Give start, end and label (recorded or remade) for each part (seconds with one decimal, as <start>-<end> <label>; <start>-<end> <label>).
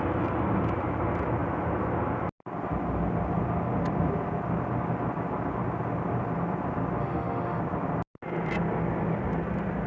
0.0-7.0 recorded; 7.0-7.6 remade; 7.6-9.9 recorded